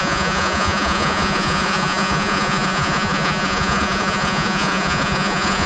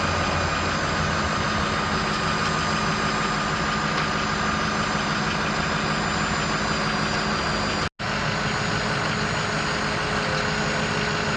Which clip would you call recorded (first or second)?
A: second